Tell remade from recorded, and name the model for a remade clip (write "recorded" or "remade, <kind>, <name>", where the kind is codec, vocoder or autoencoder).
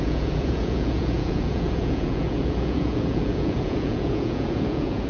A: remade, vocoder, Vocos